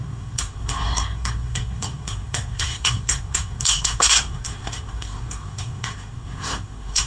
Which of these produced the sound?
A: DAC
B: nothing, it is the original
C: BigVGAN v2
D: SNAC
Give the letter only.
D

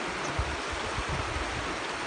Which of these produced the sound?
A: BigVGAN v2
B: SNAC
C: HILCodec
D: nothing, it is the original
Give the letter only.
D